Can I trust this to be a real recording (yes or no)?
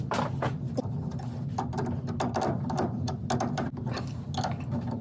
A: yes